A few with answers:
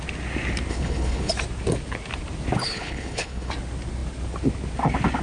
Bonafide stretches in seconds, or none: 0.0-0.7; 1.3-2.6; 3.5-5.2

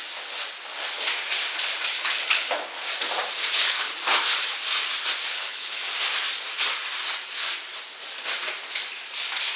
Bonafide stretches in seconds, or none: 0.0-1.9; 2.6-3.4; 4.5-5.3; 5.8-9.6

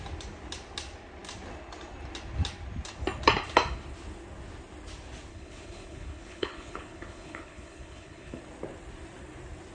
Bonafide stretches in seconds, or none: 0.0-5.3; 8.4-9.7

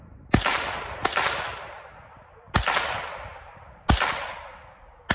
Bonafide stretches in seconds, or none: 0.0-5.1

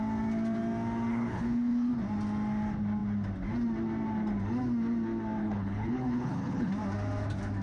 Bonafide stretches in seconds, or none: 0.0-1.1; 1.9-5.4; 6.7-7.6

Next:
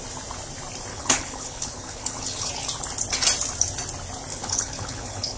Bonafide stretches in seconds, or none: 0.0-0.9; 2.5-4.3

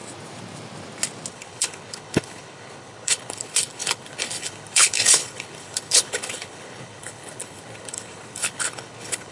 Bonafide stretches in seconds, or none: 0.0-1.3

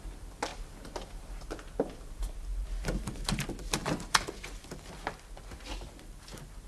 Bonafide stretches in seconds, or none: 0.0-6.7